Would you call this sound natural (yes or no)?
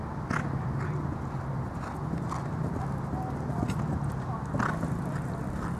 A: yes